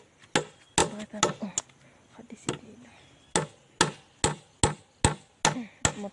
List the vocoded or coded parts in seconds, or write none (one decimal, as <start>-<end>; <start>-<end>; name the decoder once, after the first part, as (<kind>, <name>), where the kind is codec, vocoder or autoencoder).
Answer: none